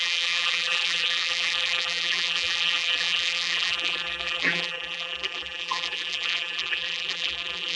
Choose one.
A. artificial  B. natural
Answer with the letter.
A